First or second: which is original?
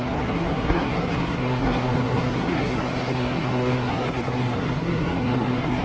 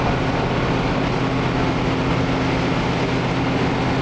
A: second